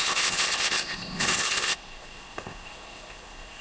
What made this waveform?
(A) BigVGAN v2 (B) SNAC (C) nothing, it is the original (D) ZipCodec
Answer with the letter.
D